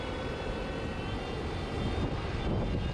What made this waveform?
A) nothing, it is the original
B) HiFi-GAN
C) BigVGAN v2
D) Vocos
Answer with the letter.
A